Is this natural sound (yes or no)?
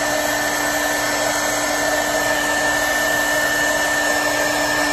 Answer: yes